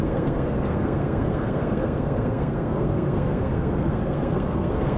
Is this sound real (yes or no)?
no